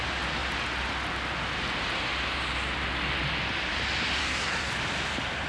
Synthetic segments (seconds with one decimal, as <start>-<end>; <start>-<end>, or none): 4.2-4.7